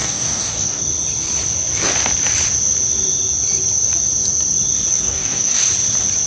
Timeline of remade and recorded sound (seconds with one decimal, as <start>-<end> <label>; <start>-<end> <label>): 0.0-0.8 remade; 0.8-4.9 recorded; 4.9-5.7 remade; 5.7-6.3 recorded